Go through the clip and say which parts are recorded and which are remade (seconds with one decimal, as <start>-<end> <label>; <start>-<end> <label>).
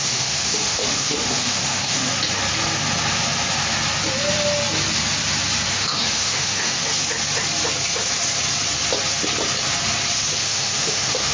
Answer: 0.0-2.1 remade; 2.1-5.7 recorded; 5.7-6.8 remade; 6.8-10.4 recorded; 10.4-11.3 remade